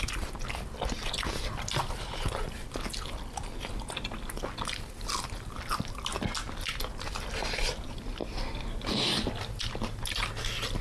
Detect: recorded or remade recorded